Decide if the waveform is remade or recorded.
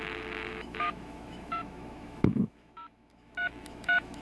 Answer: remade